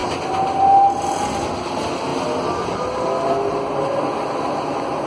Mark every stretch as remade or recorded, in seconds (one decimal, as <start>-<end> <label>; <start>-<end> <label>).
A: 0.0-5.1 recorded